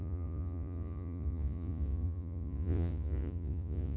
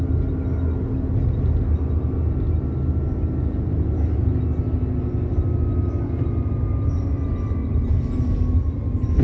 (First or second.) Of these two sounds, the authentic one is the second